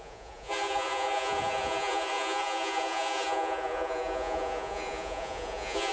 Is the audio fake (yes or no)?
yes